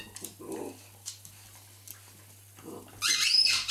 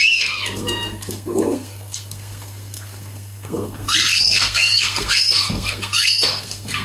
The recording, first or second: first